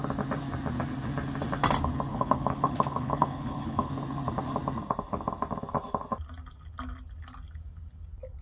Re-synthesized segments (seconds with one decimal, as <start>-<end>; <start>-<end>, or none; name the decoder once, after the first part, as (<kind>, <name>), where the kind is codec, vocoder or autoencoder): 2.1-3.9 (codec, HILCodec)